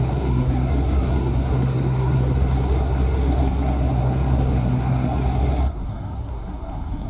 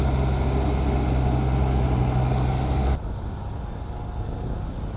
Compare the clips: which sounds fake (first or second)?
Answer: first